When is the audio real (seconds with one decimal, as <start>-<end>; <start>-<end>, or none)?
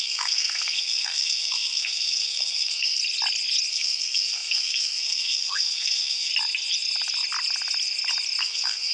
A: 3.0-3.7; 6.3-8.4